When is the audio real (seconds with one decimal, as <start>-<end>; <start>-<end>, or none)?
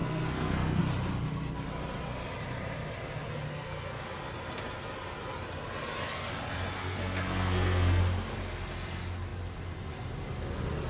0.8-3.5; 4.0-6.8; 8.0-10.9